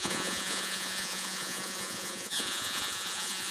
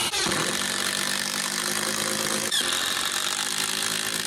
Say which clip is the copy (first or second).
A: first